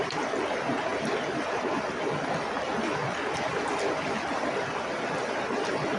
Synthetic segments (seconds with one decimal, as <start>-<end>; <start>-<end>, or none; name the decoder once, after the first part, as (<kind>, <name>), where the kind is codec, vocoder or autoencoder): none

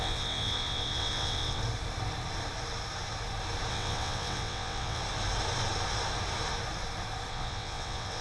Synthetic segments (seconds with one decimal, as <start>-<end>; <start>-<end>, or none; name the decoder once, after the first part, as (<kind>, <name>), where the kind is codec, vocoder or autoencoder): 0.0-1.6 (vocoder, WaveNeXt); 3.7-5.0; 7.3-8.2

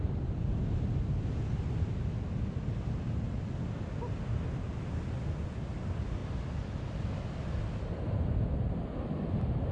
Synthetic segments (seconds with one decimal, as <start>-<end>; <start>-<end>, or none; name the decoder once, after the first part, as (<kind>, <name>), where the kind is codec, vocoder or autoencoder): none

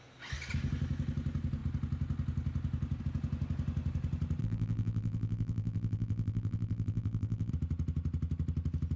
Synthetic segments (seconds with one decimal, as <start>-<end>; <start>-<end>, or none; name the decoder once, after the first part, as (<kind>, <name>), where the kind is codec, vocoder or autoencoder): 4.4-7.5 (vocoder, BigVGAN v2)

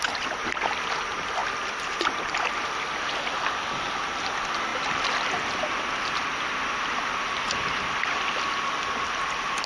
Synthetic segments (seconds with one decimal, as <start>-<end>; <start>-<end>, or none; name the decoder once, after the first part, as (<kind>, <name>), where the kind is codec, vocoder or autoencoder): none

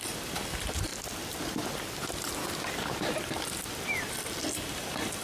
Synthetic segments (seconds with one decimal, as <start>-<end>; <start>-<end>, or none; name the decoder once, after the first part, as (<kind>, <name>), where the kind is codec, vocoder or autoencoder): 0.0-0.9 (vocoder, BigVGAN v2); 4.0-5.2

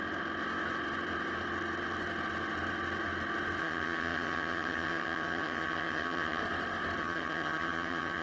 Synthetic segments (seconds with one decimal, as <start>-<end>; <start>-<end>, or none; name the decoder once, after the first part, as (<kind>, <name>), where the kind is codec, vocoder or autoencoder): 3.6-6.4 (vocoder, HiFi-GAN); 7.0-8.2